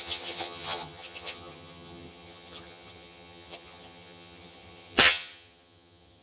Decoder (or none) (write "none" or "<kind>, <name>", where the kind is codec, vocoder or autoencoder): vocoder, HiFi-GAN